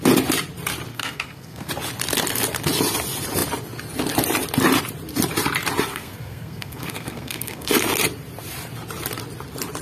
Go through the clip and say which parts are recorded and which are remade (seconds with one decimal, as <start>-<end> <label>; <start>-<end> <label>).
0.0-0.9 recorded; 0.9-1.7 remade; 1.7-5.9 recorded; 5.9-7.7 remade; 7.7-9.8 recorded